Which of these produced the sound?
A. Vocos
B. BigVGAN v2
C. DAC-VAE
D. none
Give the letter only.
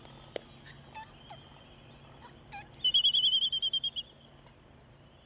D